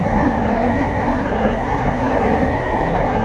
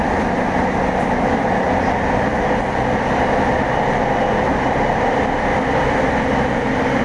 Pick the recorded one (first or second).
second